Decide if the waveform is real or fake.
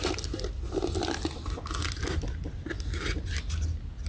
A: real